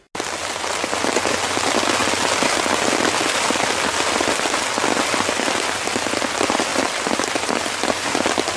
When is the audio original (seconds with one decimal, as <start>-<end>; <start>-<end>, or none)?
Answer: 0.0-8.6